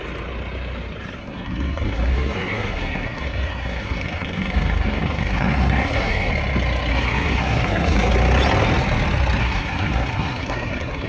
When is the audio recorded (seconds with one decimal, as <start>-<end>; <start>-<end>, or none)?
0.0-1.2; 6.3-6.9; 8.1-9.4